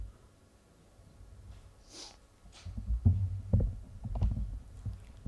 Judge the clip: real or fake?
real